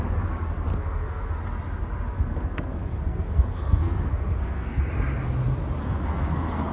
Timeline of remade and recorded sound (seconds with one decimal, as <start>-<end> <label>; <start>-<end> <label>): 0.0-0.7 recorded; 0.7-1.3 remade; 1.3-2.1 recorded; 2.1-4.8 remade; 4.8-5.8 recorded; 5.8-6.7 remade